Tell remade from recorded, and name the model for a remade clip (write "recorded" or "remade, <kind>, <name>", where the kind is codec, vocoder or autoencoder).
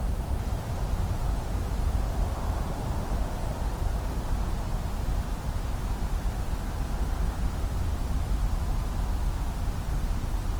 recorded